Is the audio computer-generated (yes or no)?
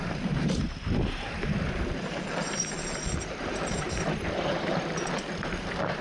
yes